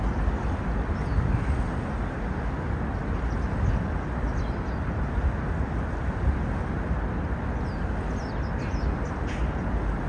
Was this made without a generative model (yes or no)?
yes